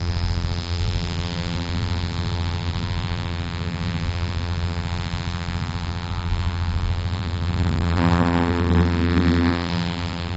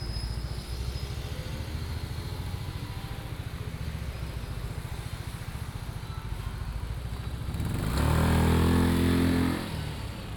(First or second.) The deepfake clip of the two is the first